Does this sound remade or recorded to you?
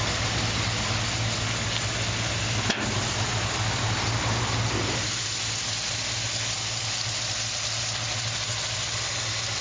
recorded